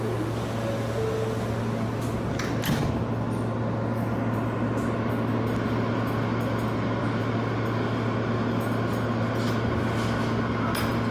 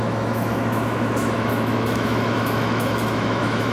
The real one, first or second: first